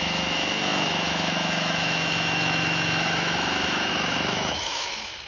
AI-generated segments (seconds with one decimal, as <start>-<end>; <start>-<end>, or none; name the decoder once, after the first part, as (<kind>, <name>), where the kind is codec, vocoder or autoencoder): 0.0-5.3 (autoencoder, DAC-VAE)